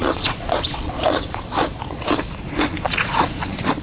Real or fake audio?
fake